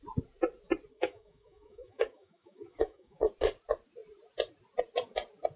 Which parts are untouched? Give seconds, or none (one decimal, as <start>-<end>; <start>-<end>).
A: 0.0-0.9; 3.3-5.6